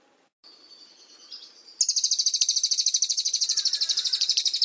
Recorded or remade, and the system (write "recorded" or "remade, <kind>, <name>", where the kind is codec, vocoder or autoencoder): recorded